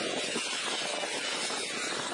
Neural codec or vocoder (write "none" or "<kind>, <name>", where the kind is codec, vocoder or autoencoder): none